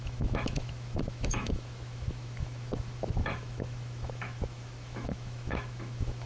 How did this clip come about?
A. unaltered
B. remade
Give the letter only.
B